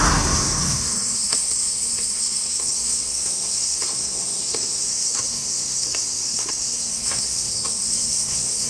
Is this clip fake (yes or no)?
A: yes